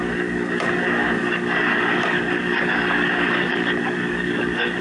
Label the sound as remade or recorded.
remade